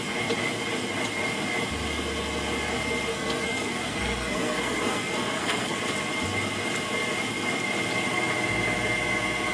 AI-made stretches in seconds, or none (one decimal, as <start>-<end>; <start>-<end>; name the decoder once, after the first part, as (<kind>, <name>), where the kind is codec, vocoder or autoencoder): 3.1-5.8 (codec, SNAC)